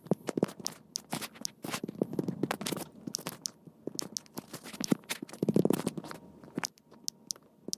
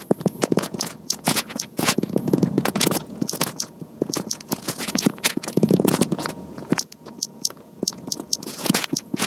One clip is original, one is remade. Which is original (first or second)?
first